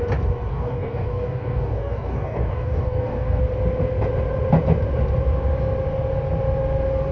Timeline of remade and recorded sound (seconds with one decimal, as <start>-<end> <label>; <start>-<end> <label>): 0.0-0.5 recorded; 0.5-3.4 remade; 3.4-7.1 recorded